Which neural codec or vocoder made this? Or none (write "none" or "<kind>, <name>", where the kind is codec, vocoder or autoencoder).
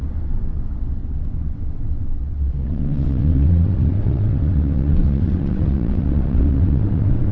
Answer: vocoder, WaveNeXt